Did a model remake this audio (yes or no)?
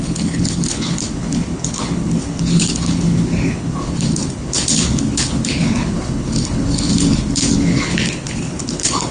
yes